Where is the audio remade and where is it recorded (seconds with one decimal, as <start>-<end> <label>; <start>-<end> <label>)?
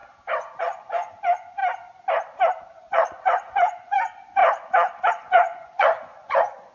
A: 0.0-0.6 recorded; 0.6-1.6 remade; 1.6-2.6 recorded; 2.6-4.4 remade; 4.4-5.1 recorded; 5.1-6.7 remade